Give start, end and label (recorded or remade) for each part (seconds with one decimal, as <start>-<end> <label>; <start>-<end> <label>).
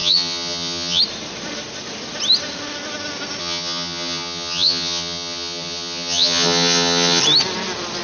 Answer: 0.0-1.0 remade; 1.0-3.4 recorded; 3.4-7.2 remade; 7.2-8.0 recorded